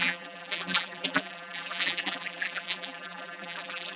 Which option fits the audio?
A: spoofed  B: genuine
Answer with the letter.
A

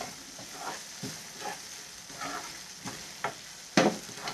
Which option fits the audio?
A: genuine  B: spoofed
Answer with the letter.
A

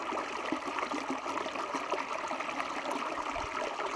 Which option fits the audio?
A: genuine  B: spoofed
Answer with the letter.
A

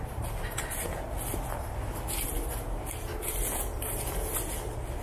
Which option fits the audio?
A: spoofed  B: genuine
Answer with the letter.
B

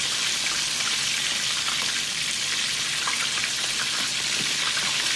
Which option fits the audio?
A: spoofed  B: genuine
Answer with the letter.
B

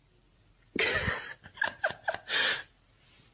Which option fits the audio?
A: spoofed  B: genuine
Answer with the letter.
B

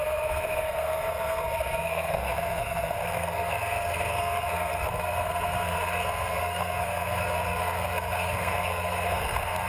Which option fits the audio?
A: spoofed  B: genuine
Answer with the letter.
A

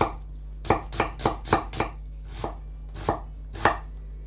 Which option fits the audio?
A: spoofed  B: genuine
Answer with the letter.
B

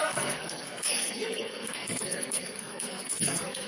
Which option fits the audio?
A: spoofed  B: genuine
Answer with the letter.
A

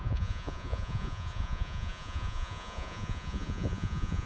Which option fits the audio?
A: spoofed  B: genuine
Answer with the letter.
A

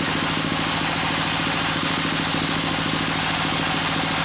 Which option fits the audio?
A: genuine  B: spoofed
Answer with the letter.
A